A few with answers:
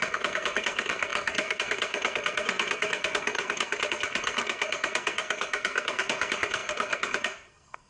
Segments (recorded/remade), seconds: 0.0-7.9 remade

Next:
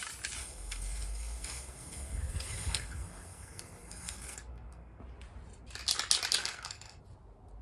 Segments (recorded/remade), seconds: 0.0-0.4 recorded; 0.4-5.0 remade; 5.0-6.4 recorded; 6.4-7.0 remade; 7.0-7.6 recorded

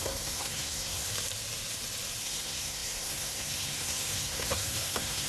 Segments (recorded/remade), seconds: 0.0-1.1 remade; 1.1-2.2 recorded; 2.2-5.3 remade

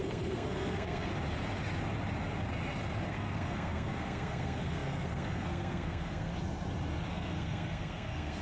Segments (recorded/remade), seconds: 0.0-1.1 remade; 1.1-3.1 recorded; 3.1-6.3 remade; 6.3-7.1 recorded; 7.1-8.4 remade